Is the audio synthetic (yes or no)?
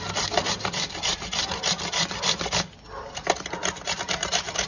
no